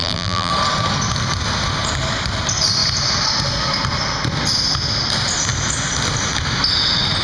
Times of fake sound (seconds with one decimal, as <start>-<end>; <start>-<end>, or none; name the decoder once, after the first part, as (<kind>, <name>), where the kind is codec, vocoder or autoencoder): 0.0-0.5 (vocoder, BigVGAN v2)

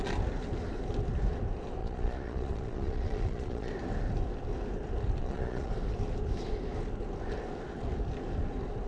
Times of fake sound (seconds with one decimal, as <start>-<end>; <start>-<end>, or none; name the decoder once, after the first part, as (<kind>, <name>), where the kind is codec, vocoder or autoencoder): 1.8-3.7 (vocoder, Vocos); 5.2-5.7

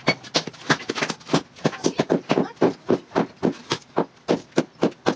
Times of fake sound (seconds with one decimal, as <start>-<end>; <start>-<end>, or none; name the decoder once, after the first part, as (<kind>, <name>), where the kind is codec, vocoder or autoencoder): none

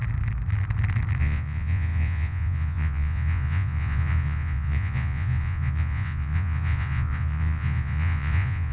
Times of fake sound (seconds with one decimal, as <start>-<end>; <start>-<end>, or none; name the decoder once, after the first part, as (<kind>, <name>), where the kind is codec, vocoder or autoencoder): 1.2-8.7 (vocoder, Vocos)